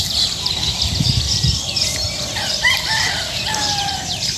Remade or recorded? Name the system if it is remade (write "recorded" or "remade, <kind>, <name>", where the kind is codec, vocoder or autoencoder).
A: remade, vocoder, BigVGAN v2